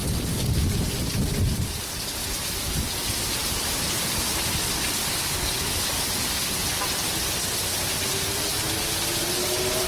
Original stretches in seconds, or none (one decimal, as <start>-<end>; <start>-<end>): 0.0-5.0; 5.6-9.9